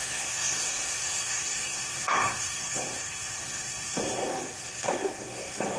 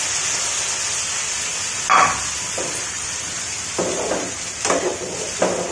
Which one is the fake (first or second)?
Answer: first